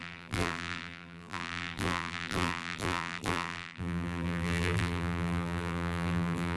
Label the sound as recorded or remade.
remade